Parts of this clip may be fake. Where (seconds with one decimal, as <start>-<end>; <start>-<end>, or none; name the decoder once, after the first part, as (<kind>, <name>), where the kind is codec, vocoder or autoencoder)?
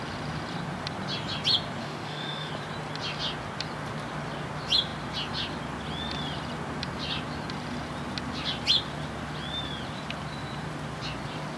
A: 1.8-2.5 (autoencoder, DAC-VAE)